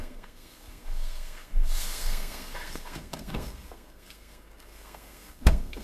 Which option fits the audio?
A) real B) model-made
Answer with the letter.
B